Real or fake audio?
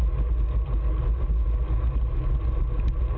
real